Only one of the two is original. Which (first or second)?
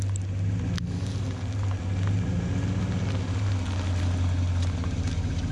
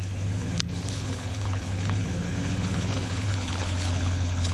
first